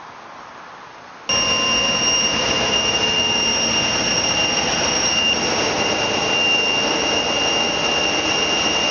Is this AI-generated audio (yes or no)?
no